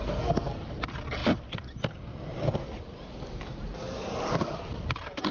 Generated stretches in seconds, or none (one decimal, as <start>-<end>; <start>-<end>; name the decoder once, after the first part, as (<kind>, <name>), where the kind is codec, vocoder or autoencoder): 0.0-0.6 (codec, SNAC)